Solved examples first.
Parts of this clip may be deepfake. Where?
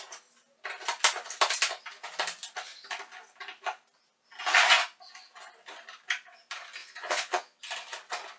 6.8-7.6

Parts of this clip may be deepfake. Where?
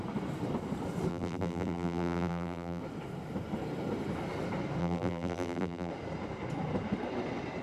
1.1-2.8; 4.8-5.9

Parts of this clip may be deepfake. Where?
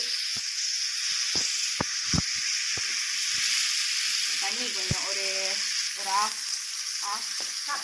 0.0-2.7; 7.2-7.8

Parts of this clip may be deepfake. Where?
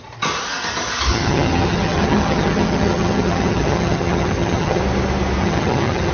1.1-4.8; 5.4-6.1